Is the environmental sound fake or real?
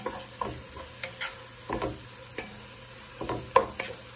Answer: real